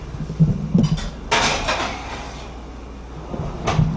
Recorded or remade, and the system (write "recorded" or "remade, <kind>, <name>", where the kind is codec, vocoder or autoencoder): recorded